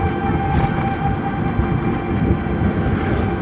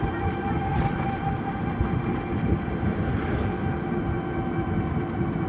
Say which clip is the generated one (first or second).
second